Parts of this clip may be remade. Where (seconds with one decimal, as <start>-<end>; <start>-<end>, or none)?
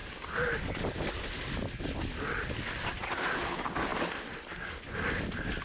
none